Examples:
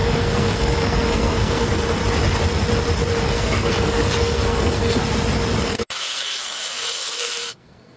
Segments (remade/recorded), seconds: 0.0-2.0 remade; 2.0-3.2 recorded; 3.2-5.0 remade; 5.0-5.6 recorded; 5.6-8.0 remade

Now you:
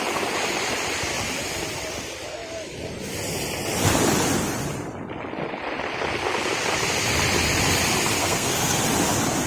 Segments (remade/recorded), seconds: 0.0-8.2 recorded; 8.2-8.8 remade; 8.8-9.5 recorded

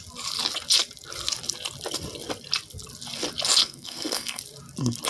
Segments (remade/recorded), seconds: 0.0-3.6 recorded; 3.6-4.4 remade; 4.4-5.1 recorded

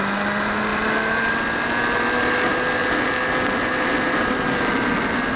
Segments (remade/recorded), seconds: 0.0-5.4 recorded